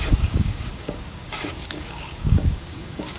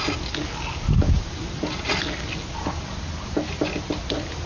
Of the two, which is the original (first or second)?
second